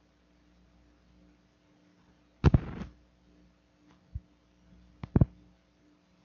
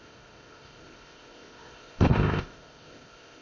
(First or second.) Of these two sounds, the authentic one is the first